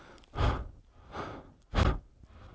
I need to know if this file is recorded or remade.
recorded